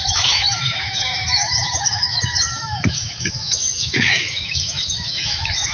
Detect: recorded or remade remade